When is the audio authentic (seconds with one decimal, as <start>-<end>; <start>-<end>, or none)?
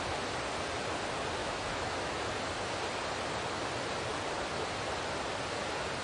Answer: 0.0-1.4; 2.2-6.0